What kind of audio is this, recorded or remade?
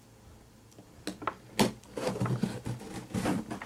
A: recorded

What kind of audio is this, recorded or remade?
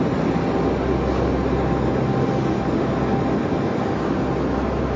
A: recorded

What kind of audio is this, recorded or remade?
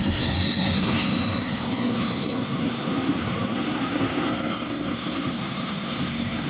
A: remade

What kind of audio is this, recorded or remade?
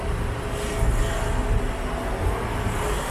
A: recorded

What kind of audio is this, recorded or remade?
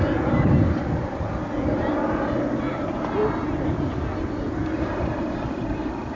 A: recorded